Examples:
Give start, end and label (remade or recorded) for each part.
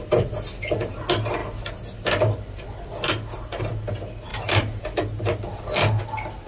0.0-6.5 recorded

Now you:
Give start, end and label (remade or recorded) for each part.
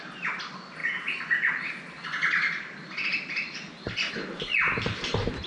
0.0-5.5 recorded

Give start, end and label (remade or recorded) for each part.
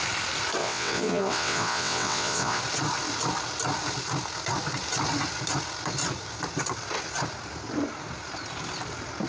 0.0-0.6 recorded; 0.6-2.6 remade; 2.6-9.3 recorded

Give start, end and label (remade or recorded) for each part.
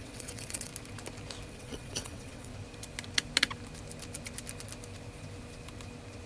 0.0-0.7 remade; 0.7-1.5 recorded; 1.5-2.5 remade; 2.5-6.3 recorded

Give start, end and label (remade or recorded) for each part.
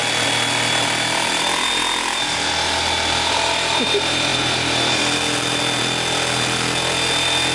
0.0-7.5 recorded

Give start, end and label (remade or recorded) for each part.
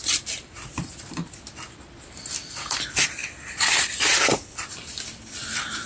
0.0-1.5 remade; 1.5-2.2 recorded; 2.2-5.9 remade